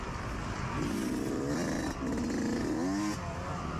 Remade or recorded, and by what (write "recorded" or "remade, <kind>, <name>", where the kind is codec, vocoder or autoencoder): recorded